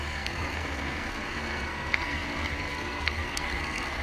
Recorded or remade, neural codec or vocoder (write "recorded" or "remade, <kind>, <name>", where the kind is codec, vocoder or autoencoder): remade, codec, SNAC